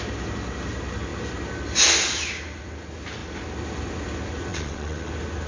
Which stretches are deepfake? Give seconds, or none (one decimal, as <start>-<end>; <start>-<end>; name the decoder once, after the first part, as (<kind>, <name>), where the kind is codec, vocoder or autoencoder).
4.5-5.1 (vocoder, WaveNeXt)